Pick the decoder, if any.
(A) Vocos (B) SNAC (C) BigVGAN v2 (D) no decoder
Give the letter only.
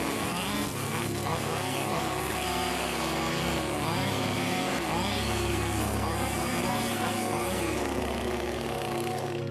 B